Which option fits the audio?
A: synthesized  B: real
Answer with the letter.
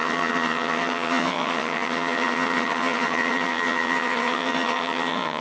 A